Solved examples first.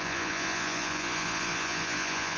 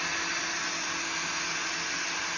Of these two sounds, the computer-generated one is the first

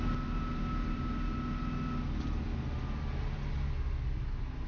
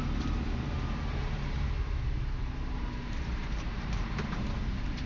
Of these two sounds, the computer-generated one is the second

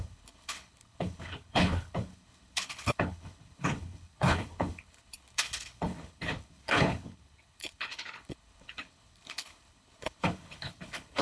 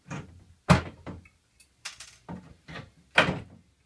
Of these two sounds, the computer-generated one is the first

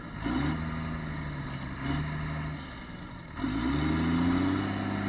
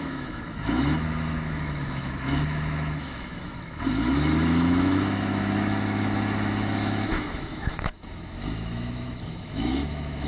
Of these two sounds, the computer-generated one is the second